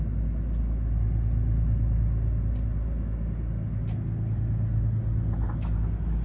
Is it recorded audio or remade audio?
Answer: recorded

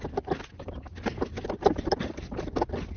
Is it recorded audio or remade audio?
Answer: recorded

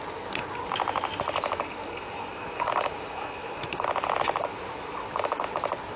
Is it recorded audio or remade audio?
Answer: recorded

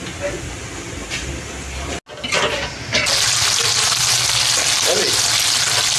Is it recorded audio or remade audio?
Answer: recorded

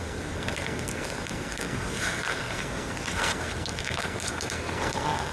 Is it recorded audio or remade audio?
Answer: remade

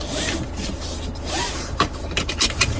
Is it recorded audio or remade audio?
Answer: recorded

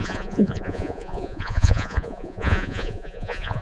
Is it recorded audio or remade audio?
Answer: remade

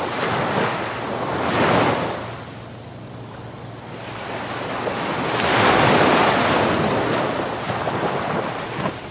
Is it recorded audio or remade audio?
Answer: recorded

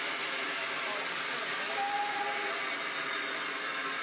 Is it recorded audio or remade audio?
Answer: recorded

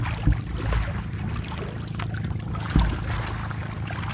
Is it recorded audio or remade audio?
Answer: recorded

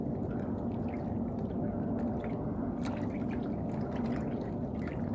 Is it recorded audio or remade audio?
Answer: recorded